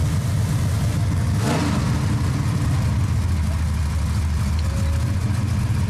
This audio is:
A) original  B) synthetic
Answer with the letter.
A